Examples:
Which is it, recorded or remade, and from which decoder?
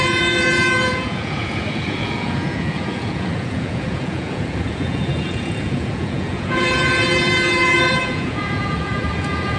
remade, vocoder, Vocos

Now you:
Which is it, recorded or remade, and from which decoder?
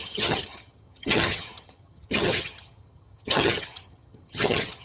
remade, vocoder, HiFi-GAN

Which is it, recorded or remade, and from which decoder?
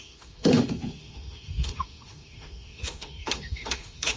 remade, autoencoder, DAC-VAE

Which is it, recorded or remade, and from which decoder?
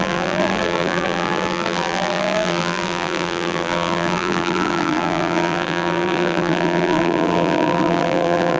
remade, vocoder, BigVGAN v2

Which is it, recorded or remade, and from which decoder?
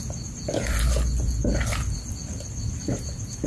recorded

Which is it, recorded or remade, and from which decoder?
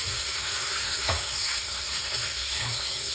remade, codec, SNAC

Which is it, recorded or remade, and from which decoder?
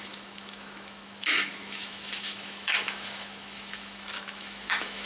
remade, autoencoder, DAC-VAE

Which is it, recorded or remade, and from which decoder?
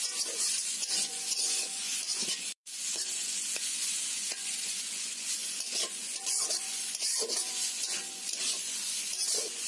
remade, vocoder, Vocos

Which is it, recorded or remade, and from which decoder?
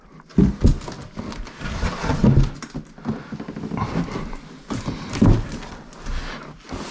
recorded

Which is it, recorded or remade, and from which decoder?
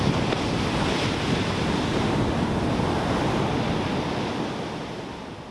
recorded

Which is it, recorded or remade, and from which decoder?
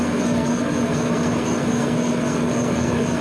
remade, codec, SNAC